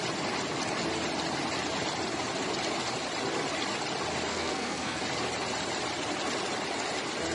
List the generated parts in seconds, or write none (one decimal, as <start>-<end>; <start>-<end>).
4.3-5.0